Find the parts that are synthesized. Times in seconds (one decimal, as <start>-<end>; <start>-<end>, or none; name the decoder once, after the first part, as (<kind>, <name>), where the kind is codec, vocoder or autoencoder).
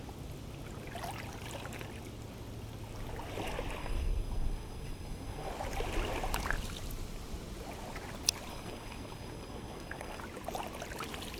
3.8-5.5 (codec, SNAC); 8.5-10.2